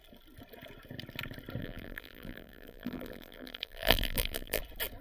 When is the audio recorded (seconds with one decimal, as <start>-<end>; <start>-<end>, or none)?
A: 0.0-1.6; 4.6-5.0